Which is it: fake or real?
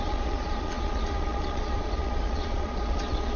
fake